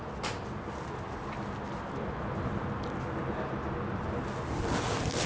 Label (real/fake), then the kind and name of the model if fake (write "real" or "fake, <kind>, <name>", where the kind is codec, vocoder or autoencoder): real